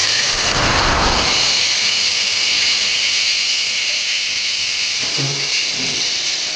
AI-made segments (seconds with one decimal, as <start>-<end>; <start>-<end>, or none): 5.7-6.6